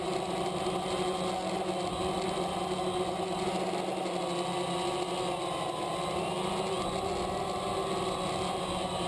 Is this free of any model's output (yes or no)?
yes